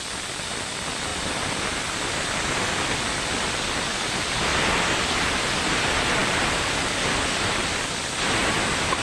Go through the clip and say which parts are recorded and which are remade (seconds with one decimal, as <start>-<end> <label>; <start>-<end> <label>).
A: 0.0-6.2 recorded; 6.2-7.8 remade; 7.8-9.0 recorded